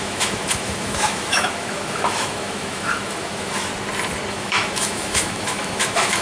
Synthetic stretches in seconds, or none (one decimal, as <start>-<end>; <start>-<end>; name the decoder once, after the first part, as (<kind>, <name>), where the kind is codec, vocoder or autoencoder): 0.0-3.7 (autoencoder, DAC-VAE); 4.3-6.2